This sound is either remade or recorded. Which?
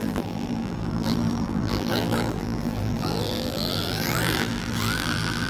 remade